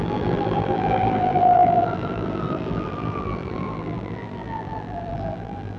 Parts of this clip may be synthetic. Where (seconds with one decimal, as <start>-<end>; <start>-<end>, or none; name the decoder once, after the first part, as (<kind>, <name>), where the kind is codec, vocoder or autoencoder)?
0.0-5.8 (vocoder, BigVGAN v2)

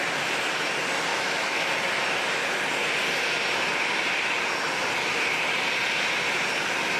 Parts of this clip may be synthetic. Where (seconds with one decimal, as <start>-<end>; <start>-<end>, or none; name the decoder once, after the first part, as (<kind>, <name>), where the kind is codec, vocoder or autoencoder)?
1.1-1.7 (autoencoder, DAC-VAE)

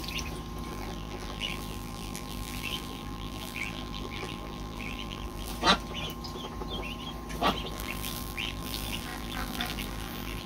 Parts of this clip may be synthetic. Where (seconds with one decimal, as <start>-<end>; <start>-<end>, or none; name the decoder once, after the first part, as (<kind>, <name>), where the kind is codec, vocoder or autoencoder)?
0.7-5.5 (vocoder, BigVGAN v2); 7.7-10.5

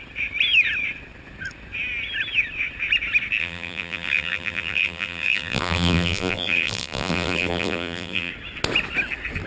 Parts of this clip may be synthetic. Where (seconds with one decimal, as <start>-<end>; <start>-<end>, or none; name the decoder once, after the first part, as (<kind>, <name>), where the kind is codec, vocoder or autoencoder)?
3.4-8.3 (vocoder, BigVGAN v2)

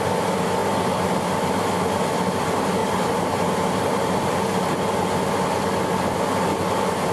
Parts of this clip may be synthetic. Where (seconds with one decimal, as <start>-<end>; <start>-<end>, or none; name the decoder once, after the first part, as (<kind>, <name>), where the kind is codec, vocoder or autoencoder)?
2.8-4.8 (vocoder, BigVGAN v2)

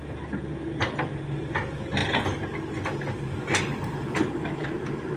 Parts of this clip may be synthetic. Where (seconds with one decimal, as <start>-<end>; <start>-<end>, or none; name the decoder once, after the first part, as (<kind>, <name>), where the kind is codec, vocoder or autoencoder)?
none

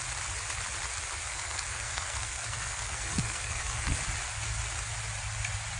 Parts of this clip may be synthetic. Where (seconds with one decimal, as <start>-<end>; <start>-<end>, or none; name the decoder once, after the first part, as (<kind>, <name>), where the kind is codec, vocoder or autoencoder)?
1.3-4.0 (codec, SNAC)